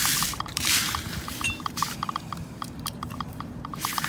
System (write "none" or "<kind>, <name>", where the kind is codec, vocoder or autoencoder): vocoder, BigVGAN v2